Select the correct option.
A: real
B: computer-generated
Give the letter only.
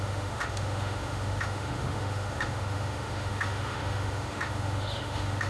B